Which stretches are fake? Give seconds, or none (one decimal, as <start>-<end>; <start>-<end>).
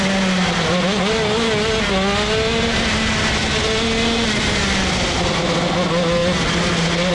none